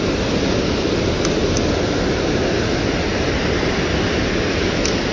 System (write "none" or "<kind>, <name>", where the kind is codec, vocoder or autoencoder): none